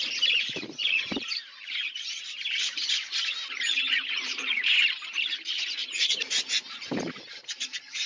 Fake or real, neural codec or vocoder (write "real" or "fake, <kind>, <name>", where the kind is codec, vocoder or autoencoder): fake, vocoder, BigVGAN v2